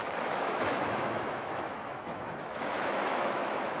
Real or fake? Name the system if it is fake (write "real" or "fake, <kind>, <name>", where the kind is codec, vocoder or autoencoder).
fake, autoencoder, DAC-VAE